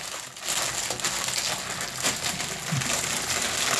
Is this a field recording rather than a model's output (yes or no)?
yes